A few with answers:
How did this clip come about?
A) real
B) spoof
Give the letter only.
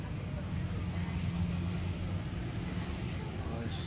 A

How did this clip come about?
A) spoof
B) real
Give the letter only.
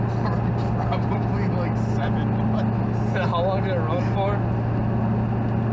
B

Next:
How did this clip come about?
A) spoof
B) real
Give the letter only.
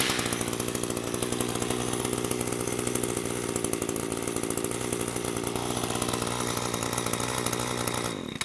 B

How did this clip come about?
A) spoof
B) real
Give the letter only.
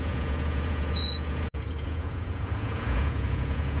A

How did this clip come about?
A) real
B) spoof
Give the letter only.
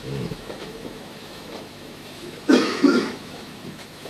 B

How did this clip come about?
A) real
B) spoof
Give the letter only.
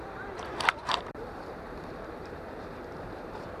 B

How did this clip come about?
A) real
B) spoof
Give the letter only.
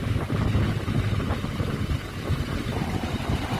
A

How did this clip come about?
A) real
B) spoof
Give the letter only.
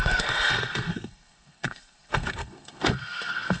B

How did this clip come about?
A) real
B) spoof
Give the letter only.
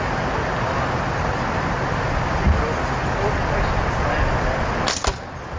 A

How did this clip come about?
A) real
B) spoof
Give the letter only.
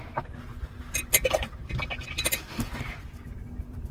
A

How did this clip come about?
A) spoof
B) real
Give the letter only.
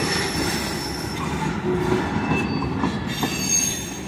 B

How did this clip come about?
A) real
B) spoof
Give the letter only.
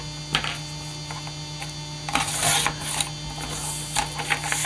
A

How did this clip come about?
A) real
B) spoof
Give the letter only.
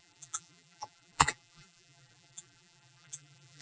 B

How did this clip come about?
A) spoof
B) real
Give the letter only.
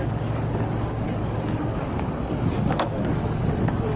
A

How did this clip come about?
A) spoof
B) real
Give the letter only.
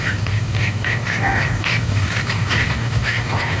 A